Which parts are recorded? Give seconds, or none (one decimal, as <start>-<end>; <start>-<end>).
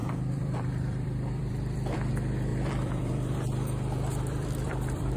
2.1-2.5